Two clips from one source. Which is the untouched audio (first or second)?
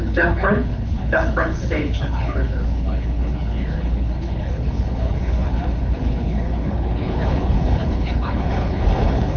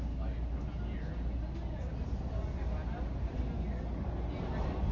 second